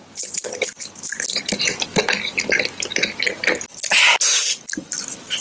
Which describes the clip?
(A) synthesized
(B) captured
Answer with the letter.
B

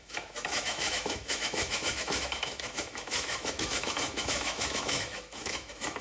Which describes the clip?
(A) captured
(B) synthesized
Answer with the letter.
B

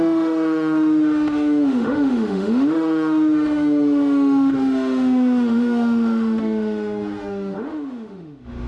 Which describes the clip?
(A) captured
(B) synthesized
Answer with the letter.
B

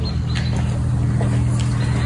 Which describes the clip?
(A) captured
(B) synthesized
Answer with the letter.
A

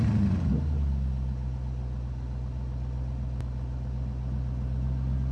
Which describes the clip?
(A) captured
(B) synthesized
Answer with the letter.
A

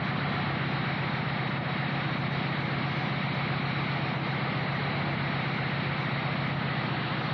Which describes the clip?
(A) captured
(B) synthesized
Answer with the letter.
A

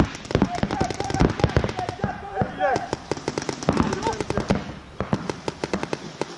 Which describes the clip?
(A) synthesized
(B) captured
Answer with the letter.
B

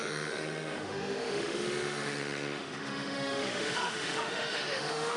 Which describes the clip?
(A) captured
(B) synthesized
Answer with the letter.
B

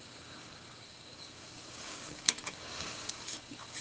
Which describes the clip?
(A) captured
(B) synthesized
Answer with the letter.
B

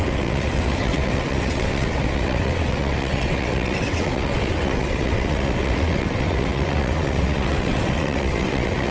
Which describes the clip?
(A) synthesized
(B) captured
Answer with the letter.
A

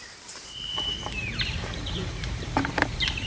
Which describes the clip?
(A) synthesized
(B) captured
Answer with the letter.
A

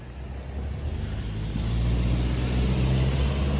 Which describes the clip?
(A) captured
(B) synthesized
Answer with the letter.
A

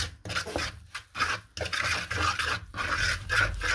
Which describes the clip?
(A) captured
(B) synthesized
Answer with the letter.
A